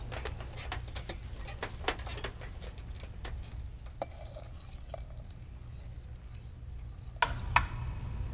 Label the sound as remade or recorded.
recorded